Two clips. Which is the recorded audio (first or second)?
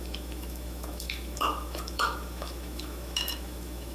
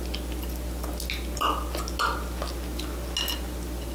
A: second